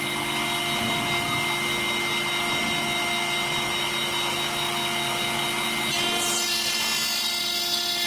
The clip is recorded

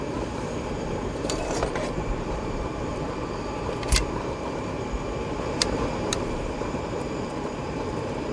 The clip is remade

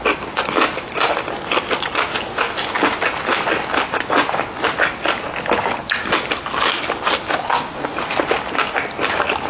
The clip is recorded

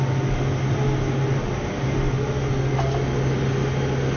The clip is recorded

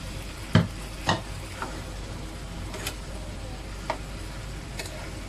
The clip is recorded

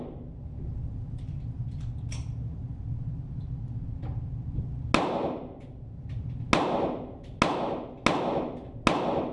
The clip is recorded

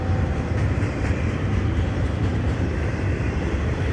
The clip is remade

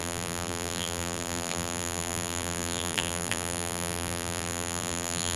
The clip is remade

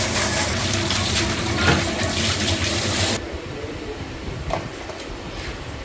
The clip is remade